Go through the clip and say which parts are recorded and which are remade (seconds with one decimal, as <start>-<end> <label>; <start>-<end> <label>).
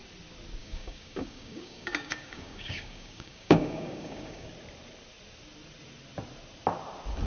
0.0-0.6 recorded; 0.6-4.5 remade; 4.5-7.3 recorded